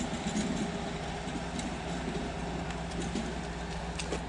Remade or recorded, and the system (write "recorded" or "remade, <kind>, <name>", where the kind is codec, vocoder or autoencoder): recorded